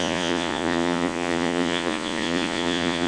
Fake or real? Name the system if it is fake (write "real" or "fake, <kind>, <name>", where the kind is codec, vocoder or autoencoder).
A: fake, vocoder, Vocos